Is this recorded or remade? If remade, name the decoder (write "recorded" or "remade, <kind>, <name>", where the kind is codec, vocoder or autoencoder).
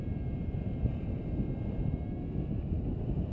recorded